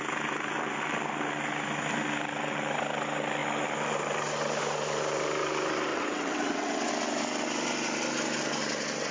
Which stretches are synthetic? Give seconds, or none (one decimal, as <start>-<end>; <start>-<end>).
5.9-6.9